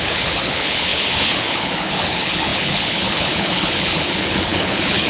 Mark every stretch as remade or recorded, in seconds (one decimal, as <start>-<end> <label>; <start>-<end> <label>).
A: 0.0-5.1 remade